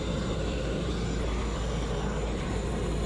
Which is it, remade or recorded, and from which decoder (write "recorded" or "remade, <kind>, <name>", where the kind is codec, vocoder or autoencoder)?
recorded